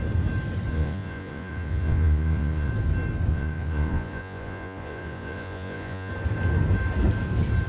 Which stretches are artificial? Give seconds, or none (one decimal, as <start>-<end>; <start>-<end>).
0.7-2.7; 3.3-6.1